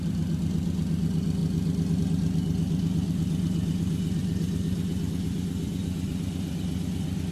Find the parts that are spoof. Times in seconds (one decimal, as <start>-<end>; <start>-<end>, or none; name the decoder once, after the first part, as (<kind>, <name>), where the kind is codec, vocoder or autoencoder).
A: 0.0-1.4 (vocoder, BigVGAN v2); 2.0-4.2; 5.1-7.3